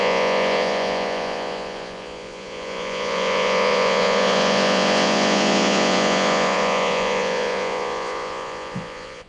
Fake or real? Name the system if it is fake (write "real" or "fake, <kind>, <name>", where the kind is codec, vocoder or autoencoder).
fake, vocoder, Vocos